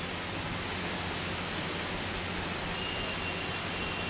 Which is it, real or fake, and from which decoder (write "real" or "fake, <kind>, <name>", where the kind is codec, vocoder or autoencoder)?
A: real